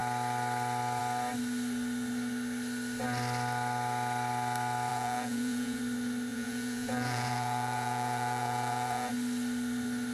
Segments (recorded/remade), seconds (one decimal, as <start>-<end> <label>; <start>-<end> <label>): 0.0-4.9 recorded; 4.9-5.8 remade; 5.8-6.3 recorded; 6.3-9.1 remade; 9.1-10.1 recorded